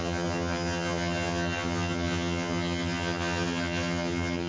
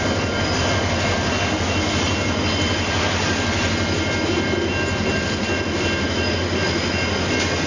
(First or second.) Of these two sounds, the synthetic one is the first